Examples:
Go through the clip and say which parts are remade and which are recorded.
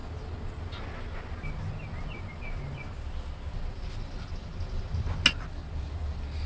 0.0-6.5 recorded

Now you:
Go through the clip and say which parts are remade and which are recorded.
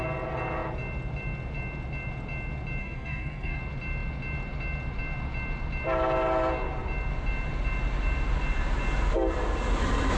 0.0-2.8 recorded; 2.8-3.6 remade; 3.6-10.2 recorded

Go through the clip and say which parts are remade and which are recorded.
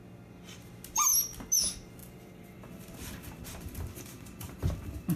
0.0-2.0 recorded; 2.0-5.2 remade